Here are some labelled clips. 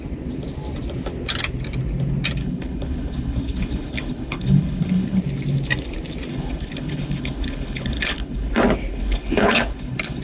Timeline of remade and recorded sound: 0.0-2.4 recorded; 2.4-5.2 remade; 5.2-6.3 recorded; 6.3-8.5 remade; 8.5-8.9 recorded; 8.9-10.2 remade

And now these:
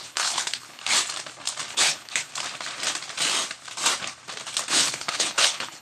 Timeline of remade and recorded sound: 0.0-0.8 remade; 0.8-1.7 recorded; 1.7-2.3 remade; 2.3-4.7 recorded; 4.7-5.8 remade

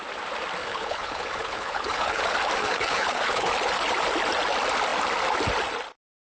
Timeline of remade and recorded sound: 0.0-0.6 recorded; 0.6-2.2 remade; 2.2-2.6 recorded; 2.6-3.5 remade; 3.5-6.3 recorded

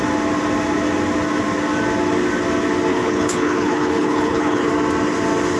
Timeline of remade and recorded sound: 0.0-2.9 recorded; 2.9-4.7 remade; 4.7-5.6 recorded

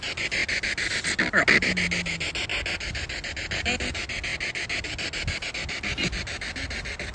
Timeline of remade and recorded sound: 0.0-7.1 recorded